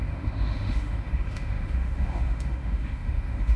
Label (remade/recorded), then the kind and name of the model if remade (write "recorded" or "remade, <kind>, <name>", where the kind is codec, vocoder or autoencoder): remade, autoencoder, DAC-VAE